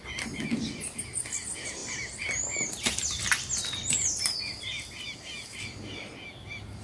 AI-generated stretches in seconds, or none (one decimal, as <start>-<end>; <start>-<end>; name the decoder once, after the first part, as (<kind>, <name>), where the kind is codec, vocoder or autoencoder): none